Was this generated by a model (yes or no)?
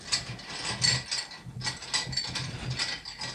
no